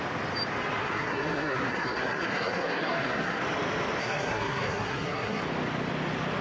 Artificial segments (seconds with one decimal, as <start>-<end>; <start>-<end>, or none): 0.8-3.4; 4.0-5.4